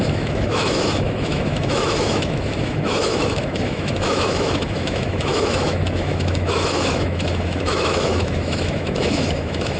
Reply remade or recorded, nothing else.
remade